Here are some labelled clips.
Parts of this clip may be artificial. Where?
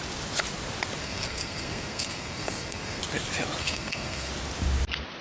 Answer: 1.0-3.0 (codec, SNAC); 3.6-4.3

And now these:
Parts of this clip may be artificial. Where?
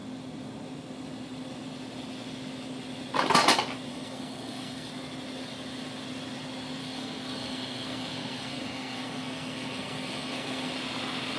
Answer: 3.9-4.9 (codec, SNAC); 6.8-10.7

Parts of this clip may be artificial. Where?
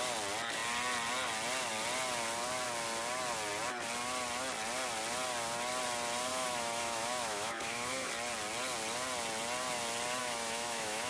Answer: 6.3-8.1 (autoencoder, DAC-VAE); 10.2-11.1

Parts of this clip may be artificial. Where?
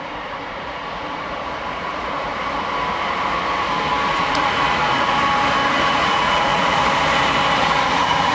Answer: 0.0-2.3 (vocoder, Vocos); 4.1-5.2; 5.7-6.8; 7.7-8.3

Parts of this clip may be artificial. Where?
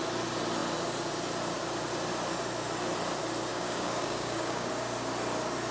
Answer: 3.5-4.7 (codec, DAC)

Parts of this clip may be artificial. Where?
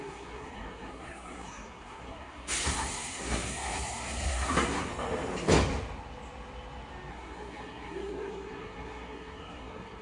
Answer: 0.0-4.9 (codec, SNAC); 7.1-10.0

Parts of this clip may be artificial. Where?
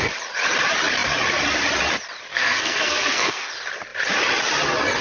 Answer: 2.3-3.5 (codec, SNAC)